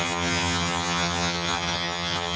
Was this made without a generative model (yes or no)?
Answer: no